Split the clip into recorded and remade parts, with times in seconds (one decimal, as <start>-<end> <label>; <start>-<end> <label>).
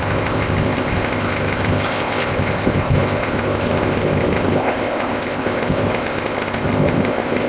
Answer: 0.0-7.5 remade